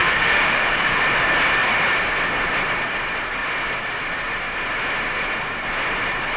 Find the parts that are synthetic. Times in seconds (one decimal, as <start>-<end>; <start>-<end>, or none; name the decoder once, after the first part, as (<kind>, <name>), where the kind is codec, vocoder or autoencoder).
0.0-1.0 (autoencoder, DAC-VAE)